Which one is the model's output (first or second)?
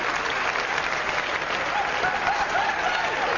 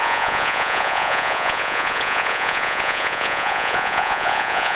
second